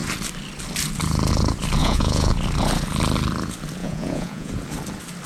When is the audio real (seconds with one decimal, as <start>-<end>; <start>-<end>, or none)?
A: 0.0-1.8; 2.3-3.8; 4.5-5.3